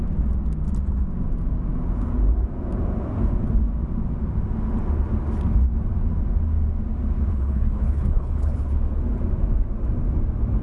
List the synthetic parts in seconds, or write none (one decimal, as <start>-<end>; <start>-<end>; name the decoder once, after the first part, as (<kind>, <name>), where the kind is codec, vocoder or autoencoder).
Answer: 7.3-8.9 (codec, HILCodec)